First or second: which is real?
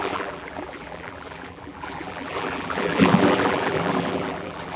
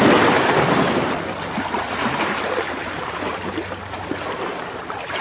second